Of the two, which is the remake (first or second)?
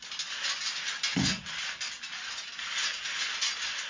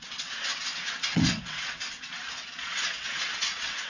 second